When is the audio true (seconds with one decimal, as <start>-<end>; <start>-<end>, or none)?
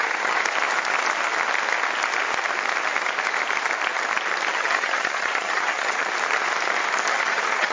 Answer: 0.4-4.5; 6.0-7.1